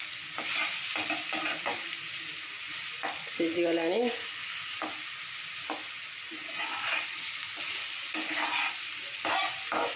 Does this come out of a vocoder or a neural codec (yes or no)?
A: no